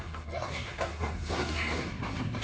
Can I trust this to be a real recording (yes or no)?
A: no